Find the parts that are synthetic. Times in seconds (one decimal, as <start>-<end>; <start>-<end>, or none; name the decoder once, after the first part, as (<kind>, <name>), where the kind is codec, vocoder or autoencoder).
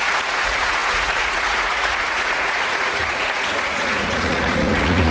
0.0-5.1 (vocoder, Vocos)